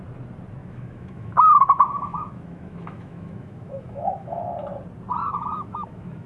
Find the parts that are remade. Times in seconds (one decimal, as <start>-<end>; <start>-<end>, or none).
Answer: 0.6-4.4; 5.2-6.3